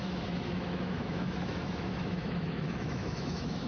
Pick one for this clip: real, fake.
fake